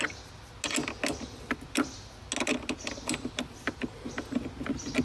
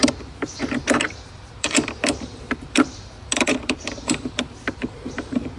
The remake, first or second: second